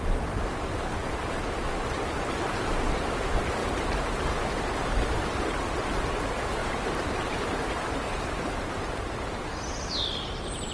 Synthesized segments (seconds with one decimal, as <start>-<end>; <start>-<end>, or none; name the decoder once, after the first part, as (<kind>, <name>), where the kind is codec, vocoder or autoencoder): 3.6-5.8 (vocoder, BigVGAN v2); 6.6-8.1